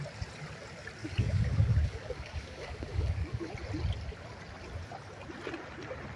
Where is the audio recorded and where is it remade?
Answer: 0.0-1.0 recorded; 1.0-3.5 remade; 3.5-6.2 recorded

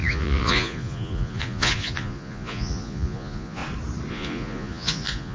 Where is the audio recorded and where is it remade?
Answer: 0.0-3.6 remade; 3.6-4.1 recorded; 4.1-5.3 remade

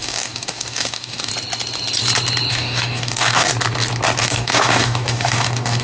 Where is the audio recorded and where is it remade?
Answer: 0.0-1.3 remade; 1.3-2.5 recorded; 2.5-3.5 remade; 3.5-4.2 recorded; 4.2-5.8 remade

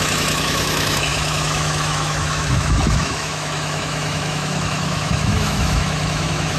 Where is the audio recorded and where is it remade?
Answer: 0.0-6.6 remade